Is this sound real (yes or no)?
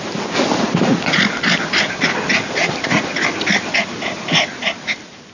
yes